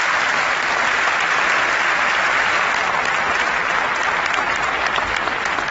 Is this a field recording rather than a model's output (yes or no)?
yes